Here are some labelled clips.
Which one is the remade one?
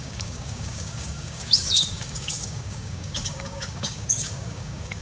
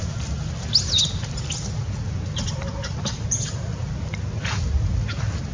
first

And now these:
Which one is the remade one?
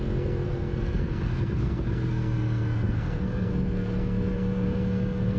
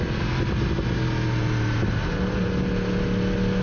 first